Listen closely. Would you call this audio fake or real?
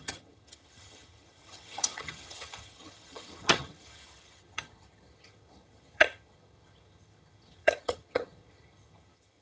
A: fake